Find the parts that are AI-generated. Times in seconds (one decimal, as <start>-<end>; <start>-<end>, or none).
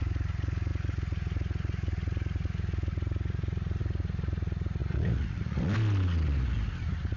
4.8-5.6